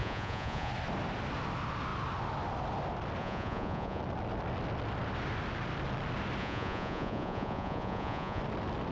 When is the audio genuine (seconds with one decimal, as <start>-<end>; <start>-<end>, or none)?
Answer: 0.7-3.2; 4.0-6.4; 8.4-8.9